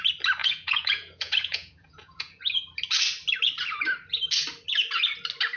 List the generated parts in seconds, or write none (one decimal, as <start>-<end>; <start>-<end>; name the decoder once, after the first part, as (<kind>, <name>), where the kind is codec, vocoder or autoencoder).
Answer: 0.4-2.4 (vocoder, Vocos)